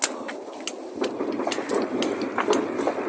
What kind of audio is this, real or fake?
real